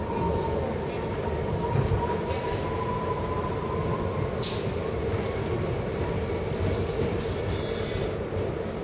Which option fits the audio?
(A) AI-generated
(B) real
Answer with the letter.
B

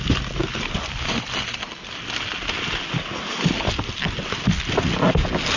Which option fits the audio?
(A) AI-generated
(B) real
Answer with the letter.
B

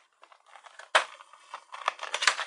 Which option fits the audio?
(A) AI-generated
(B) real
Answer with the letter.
B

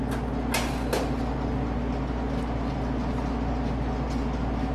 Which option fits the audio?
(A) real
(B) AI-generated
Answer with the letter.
A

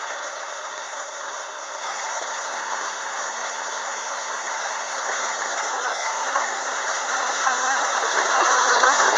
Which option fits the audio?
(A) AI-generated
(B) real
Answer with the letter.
A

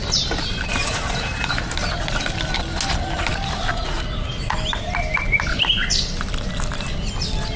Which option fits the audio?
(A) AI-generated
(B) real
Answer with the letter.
B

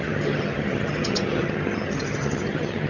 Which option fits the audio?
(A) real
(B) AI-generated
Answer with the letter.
B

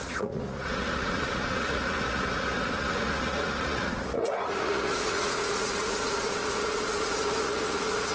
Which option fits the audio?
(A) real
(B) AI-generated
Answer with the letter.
B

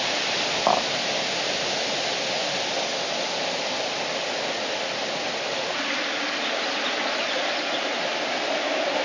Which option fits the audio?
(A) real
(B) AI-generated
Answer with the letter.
A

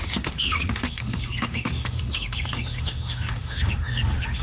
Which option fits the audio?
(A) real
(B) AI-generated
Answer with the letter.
B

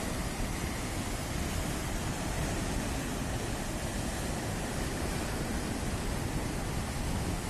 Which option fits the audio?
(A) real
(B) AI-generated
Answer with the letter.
A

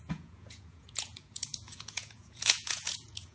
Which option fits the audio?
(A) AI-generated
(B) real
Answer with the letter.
A